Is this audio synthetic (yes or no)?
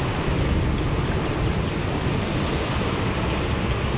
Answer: no